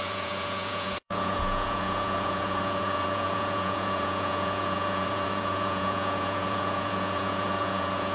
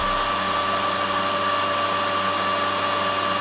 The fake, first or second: first